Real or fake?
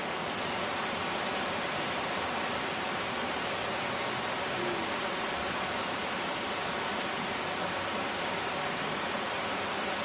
real